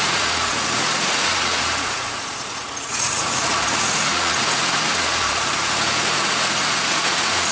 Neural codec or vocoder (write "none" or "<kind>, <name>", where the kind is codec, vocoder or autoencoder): vocoder, Vocos